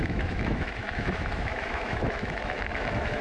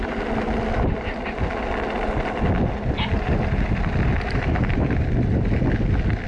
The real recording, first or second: second